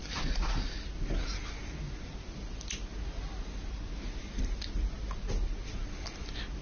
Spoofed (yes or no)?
no